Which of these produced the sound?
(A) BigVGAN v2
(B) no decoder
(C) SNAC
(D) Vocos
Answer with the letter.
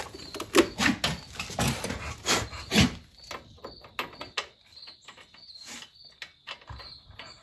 B